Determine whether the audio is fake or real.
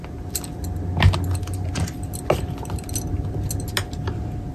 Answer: real